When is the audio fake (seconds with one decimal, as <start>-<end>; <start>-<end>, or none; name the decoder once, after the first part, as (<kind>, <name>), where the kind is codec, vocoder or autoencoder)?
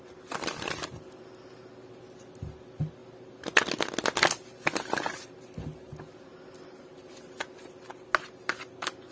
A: 3.0-3.6 (vocoder, BigVGAN v2)